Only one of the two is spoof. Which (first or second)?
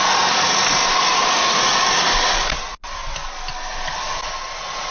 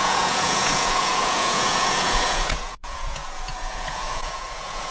second